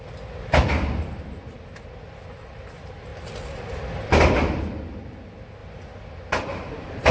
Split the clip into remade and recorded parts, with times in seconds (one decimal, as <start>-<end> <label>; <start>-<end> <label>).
0.0-7.1 remade